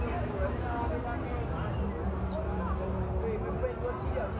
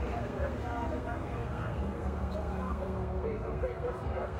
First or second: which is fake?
second